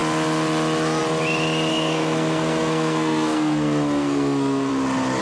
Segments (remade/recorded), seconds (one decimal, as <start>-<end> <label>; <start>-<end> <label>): 0.0-1.7 recorded; 1.7-4.7 remade; 4.7-5.2 recorded